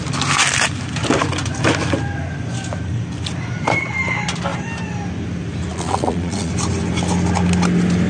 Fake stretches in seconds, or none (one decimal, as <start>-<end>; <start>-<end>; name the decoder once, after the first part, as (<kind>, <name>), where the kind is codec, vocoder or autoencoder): 5.7-6.5 (vocoder, Vocos)